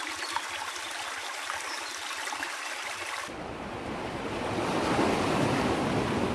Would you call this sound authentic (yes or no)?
no